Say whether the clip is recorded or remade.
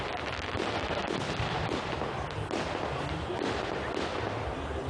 recorded